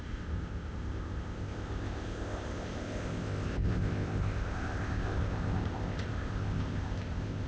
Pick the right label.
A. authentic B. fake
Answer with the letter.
B